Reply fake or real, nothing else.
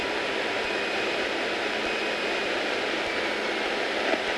real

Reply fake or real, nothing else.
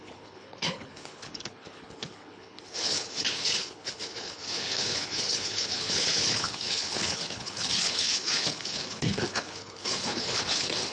fake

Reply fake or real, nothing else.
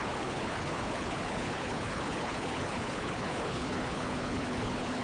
fake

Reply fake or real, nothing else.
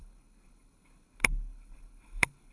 fake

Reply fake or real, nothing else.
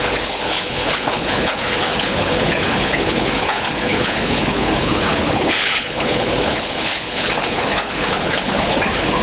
fake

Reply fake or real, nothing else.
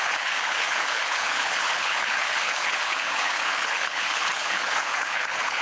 fake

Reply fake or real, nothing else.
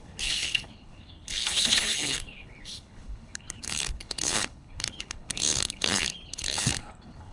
fake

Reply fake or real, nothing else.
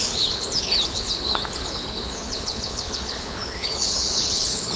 fake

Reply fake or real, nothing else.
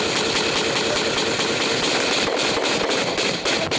real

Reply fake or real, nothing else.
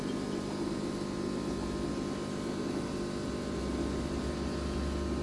real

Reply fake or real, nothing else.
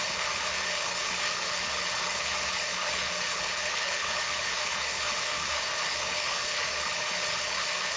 fake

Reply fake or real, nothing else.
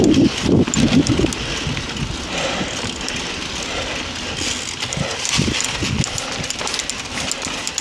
real